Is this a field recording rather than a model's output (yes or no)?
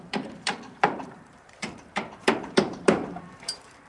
no